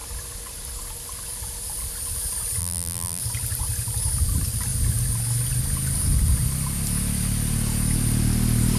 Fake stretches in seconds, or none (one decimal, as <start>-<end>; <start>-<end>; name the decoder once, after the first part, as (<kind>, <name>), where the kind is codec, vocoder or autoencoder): 2.6-3.2 (vocoder, BigVGAN v2)